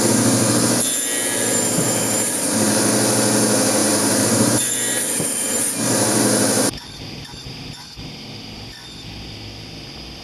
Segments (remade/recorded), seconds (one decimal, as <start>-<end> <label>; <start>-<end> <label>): 0.0-1.5 recorded; 1.5-2.8 remade; 2.8-3.8 recorded; 3.8-7.9 remade; 7.9-10.2 recorded